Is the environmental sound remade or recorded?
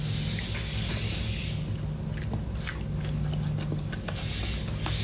recorded